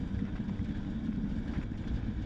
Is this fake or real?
real